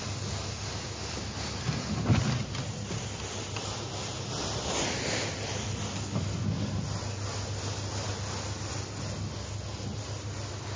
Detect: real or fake real